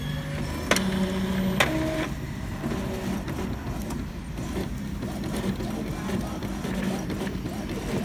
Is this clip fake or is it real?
real